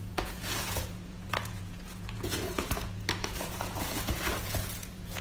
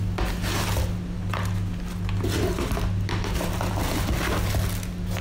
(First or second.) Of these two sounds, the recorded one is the second